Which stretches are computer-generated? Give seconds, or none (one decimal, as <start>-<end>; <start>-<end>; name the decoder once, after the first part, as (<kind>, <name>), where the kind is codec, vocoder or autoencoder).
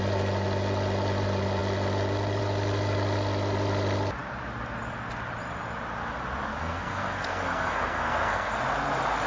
6.5-8.6 (codec, SNAC)